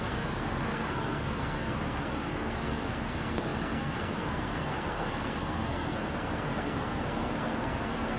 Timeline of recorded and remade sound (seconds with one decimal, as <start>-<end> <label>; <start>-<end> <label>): 0.0-8.2 remade